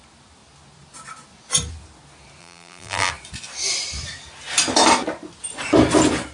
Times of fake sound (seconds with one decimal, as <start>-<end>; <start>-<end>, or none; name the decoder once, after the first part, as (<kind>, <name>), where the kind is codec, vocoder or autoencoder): 2.4-3.1 (vocoder, BigVGAN v2)